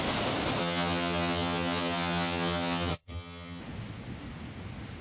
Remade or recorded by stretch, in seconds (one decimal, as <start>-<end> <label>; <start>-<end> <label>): 0.0-0.6 recorded; 0.6-3.6 remade; 3.6-5.0 recorded